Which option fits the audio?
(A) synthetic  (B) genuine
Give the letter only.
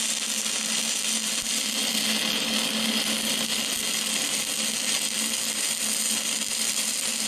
B